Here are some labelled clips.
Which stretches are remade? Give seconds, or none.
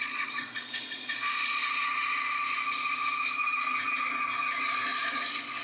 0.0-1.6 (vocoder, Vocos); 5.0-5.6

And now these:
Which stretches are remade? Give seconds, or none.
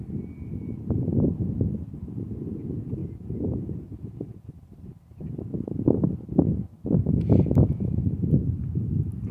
3.0-4.5 (vocoder, Vocos)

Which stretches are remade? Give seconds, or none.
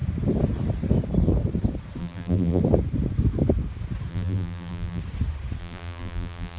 2.0-2.6 (vocoder, BigVGAN v2); 4.1-5.0; 5.6-6.6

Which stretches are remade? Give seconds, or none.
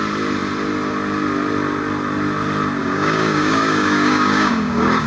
2.8-5.1 (codec, DAC)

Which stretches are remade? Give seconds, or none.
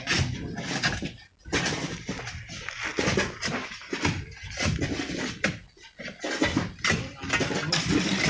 none